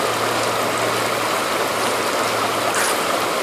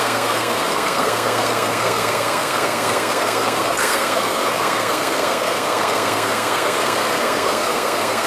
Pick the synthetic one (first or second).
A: second